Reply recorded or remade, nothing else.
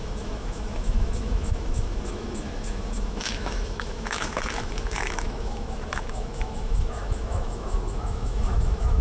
remade